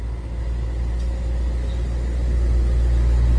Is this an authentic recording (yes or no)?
yes